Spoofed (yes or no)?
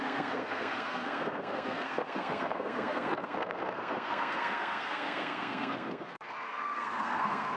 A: yes